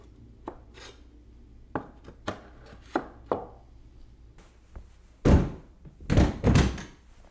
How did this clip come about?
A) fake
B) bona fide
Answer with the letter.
B